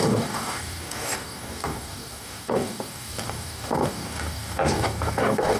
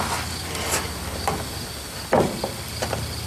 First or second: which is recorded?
second